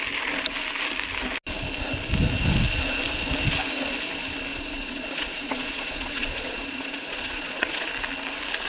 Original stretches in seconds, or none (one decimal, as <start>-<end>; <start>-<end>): 0.0-4.5; 7.9-8.7